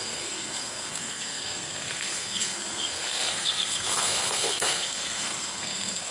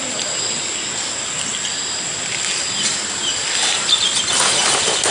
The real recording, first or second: second